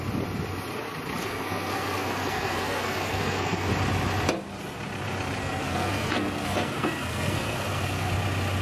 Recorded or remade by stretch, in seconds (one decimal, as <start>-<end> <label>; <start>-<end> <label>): 0.0-1.2 recorded; 1.2-3.7 remade; 3.7-5.4 recorded; 5.4-8.1 remade; 8.1-8.6 recorded